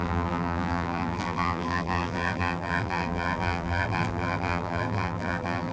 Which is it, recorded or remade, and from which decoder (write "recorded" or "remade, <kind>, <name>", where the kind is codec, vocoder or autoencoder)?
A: remade, vocoder, BigVGAN v2